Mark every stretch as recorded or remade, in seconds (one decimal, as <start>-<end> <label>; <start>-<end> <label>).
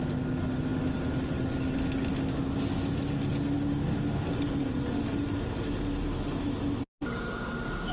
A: 0.0-7.9 recorded